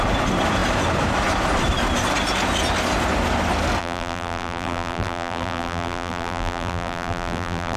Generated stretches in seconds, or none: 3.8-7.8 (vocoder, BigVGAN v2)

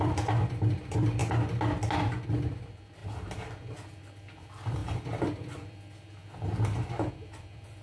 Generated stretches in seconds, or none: 0.0-1.2 (vocoder, BigVGAN v2); 2.4-3.0; 4.0-6.2; 7.1-7.8

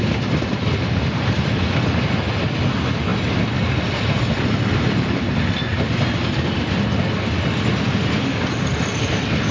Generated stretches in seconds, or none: none

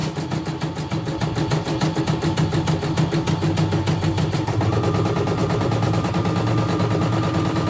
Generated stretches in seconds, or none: 4.1-4.6 (vocoder, BigVGAN v2); 5.4-6.1

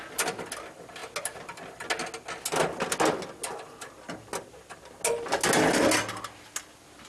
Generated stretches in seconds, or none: none

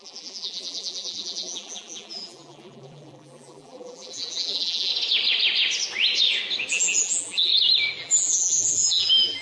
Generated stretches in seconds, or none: 0.0-4.9 (vocoder, BigVGAN v2); 6.7-7.5; 8.0-9.4